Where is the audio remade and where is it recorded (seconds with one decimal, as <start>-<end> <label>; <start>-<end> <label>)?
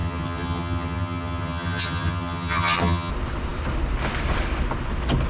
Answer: 0.0-3.1 remade; 3.1-5.3 recorded